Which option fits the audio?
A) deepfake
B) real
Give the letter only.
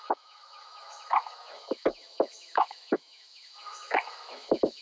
A